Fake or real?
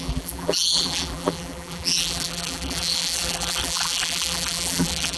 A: fake